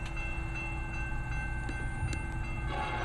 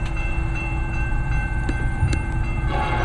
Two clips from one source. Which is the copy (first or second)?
second